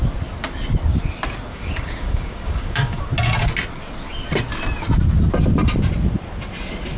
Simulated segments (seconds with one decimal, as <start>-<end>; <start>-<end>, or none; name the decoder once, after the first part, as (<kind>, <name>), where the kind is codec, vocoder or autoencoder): 1.5-3.0 (codec, DAC)